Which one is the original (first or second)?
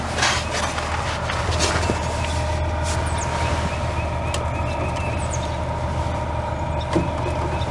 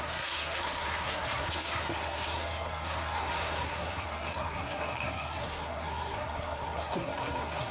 first